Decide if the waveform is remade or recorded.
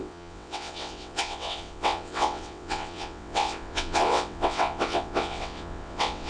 remade